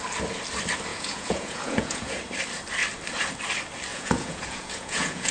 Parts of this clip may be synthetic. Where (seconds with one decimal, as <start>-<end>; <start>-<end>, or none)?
0.9-2.2; 3.9-5.3